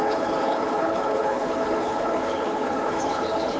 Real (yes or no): no